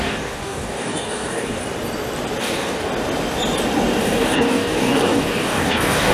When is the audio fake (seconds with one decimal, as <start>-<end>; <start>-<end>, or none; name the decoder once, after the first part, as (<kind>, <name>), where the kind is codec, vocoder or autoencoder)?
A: 0.0-1.6 (codec, DAC); 2.4-2.9; 4.0-6.1